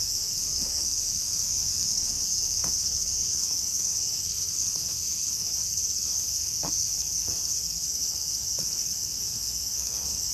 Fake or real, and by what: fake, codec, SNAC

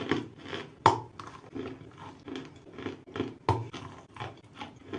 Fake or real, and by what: real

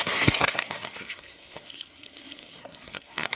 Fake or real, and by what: fake, codec, SNAC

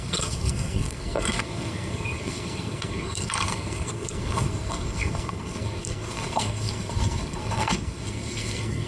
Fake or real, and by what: fake, codec, SNAC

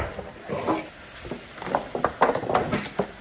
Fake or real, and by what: real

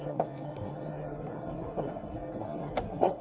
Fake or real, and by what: fake, codec, SNAC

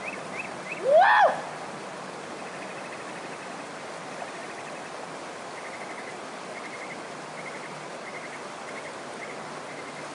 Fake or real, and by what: real